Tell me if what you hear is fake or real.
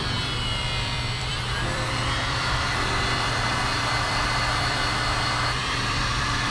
fake